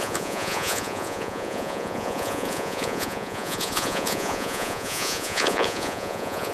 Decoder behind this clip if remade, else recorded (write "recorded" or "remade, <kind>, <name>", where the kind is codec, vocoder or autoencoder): remade, vocoder, Vocos